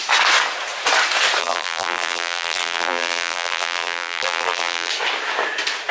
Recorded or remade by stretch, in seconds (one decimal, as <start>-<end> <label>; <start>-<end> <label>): 0.0-1.4 recorded; 1.4-4.9 remade; 4.9-5.9 recorded